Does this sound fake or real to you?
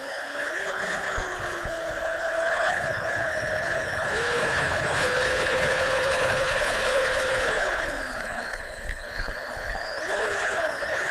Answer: fake